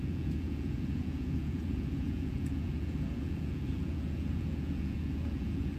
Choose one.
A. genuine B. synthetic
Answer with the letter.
B